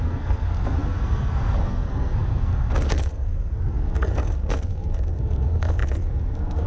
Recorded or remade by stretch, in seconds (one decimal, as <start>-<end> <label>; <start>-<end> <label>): 0.0-6.7 remade

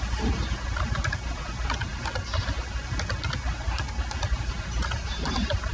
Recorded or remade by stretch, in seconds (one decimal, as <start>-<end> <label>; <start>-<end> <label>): 0.0-5.7 recorded

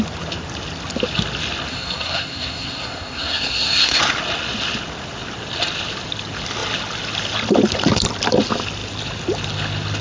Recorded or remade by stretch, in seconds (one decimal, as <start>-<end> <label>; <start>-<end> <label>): 0.0-1.7 recorded; 1.7-4.0 remade; 4.0-10.0 recorded

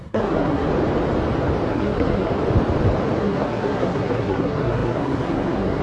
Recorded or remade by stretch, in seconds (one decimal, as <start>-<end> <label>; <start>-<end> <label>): 0.0-0.7 remade; 0.7-1.7 recorded; 1.7-2.3 remade; 2.3-3.2 recorded; 3.2-5.8 remade